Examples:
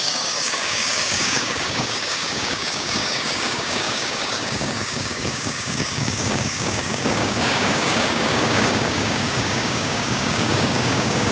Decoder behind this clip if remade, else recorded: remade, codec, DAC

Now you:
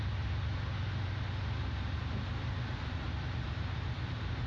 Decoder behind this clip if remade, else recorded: recorded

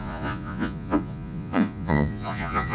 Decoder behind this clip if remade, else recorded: remade, vocoder, Vocos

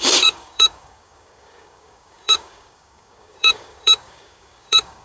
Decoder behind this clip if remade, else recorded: remade, codec, DAC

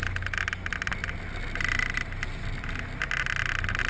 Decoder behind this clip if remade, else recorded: recorded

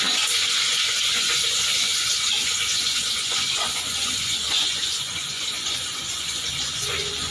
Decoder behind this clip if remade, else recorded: remade, vocoder, Vocos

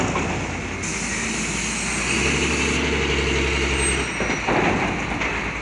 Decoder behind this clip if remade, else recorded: recorded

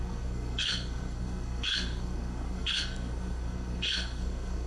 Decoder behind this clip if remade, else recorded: remade, codec, SNAC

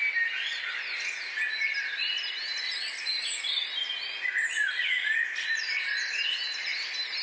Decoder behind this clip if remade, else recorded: recorded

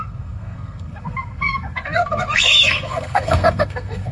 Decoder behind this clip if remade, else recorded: remade, codec, SNAC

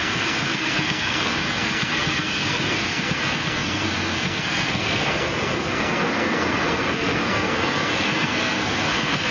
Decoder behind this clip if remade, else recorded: remade, codec, SNAC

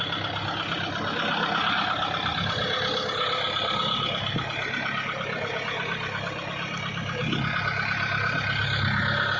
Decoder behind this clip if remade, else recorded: recorded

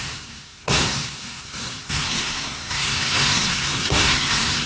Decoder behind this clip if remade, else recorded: remade, codec, SNAC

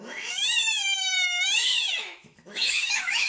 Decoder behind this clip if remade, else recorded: remade, autoencoder, DAC-VAE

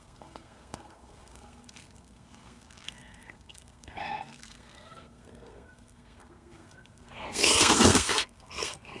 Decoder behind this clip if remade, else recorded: remade, codec, SNAC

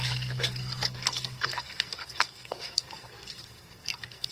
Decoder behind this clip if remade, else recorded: remade, codec, SNAC